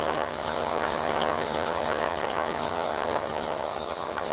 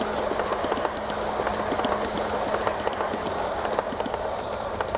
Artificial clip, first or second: first